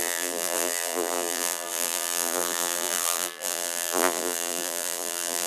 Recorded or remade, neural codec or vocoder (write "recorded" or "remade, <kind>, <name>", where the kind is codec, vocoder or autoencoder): remade, vocoder, BigVGAN v2